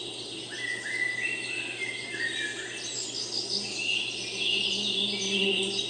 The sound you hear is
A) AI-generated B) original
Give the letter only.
B